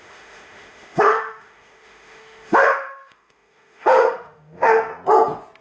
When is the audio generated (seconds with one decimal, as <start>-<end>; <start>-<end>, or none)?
0.0-4.9